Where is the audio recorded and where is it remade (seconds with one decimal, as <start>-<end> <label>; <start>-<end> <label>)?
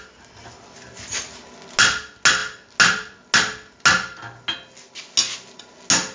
0.0-6.1 recorded